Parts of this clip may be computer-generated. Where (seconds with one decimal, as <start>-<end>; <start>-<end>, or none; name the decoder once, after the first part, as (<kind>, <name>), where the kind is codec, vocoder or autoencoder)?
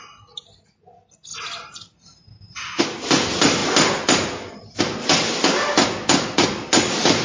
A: none